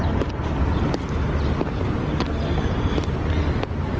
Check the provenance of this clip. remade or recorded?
recorded